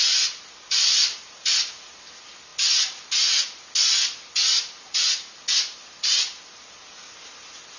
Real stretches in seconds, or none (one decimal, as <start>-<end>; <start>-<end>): 0.0-7.8